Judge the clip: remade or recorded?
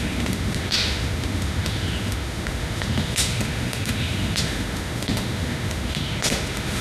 remade